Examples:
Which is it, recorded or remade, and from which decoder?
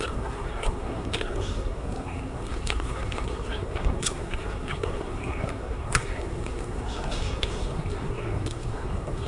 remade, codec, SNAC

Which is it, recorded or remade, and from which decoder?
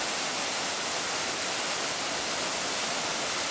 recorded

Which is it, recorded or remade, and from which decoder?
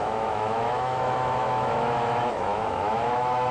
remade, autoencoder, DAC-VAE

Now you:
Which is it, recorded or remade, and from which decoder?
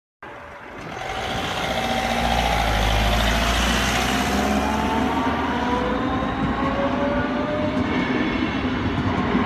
recorded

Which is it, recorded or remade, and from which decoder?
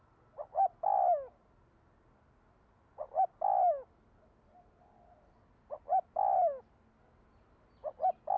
recorded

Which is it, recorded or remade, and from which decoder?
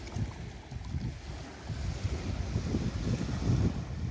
recorded